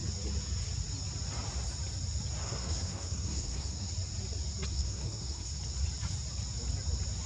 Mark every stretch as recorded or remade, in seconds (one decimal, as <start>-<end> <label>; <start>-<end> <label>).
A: 0.0-2.4 recorded; 2.4-3.9 remade; 3.9-4.7 recorded; 4.7-5.6 remade; 5.6-7.3 recorded